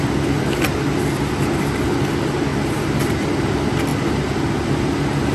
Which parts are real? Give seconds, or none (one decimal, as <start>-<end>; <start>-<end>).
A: 0.0-5.3